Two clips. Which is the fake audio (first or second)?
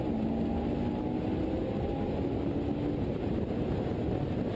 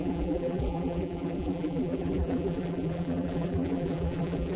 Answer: second